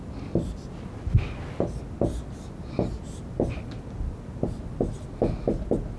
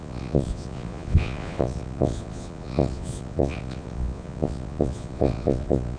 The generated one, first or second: second